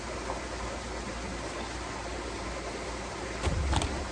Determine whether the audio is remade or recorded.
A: recorded